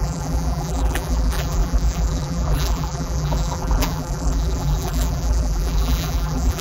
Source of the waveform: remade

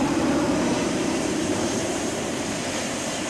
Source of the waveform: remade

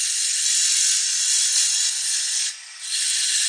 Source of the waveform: recorded